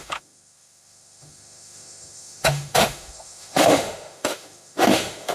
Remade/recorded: remade